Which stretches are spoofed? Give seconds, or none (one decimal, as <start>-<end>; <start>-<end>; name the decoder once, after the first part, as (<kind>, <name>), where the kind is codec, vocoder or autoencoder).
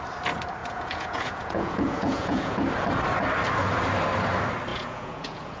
0.6-2.7 (vocoder, Vocos); 4.7-5.6